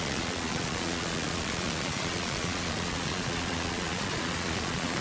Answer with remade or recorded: remade